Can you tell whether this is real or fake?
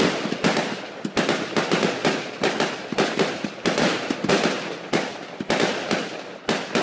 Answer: real